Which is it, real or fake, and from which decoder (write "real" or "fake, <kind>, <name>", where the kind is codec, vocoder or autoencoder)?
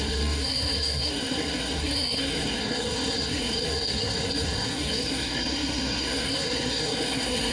fake, codec, SNAC